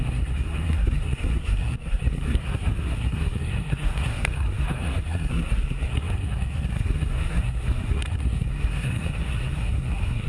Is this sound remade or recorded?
remade